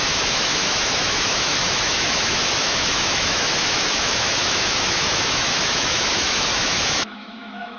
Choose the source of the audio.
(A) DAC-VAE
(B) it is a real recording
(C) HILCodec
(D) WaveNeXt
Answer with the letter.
A